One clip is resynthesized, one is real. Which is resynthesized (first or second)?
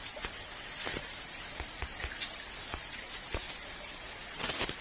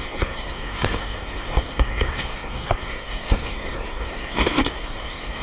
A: second